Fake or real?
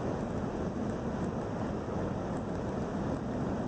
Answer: real